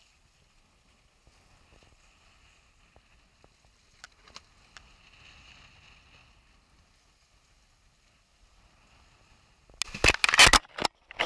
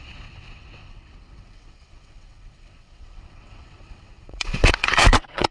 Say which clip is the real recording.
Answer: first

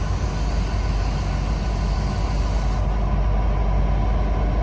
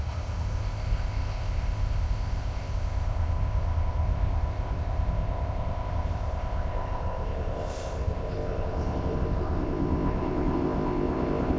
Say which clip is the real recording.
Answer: first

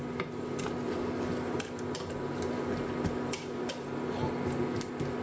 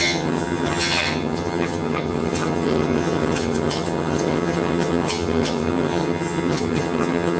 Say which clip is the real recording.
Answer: first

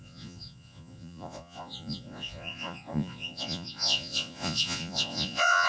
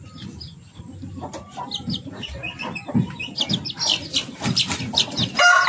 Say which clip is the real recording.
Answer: second